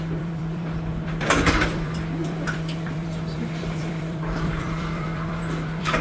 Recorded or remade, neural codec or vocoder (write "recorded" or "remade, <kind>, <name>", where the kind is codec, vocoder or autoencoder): remade, vocoder, BigVGAN v2